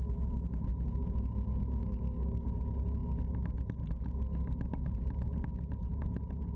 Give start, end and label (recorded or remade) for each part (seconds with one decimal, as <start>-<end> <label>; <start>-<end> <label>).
0.0-1.8 recorded; 1.8-2.6 remade; 2.6-6.6 recorded